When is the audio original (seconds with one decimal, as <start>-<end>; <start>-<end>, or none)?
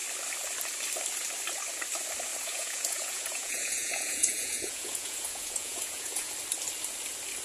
0.0-2.3; 6.3-7.4